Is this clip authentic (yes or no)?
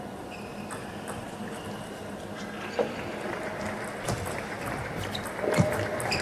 yes